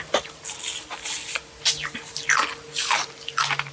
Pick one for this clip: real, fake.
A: real